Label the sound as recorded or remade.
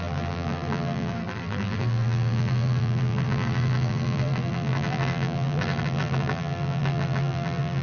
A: remade